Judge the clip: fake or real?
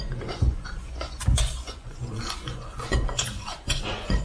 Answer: fake